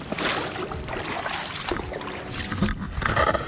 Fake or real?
real